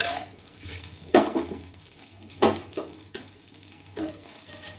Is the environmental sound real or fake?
fake